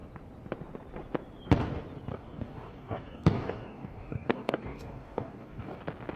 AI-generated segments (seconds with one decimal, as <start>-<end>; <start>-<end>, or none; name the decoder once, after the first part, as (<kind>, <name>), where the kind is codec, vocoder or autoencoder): 2.1-5.8 (codec, DAC)